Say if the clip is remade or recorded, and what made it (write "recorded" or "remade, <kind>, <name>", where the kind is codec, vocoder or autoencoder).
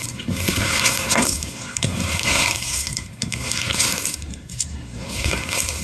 remade, codec, SNAC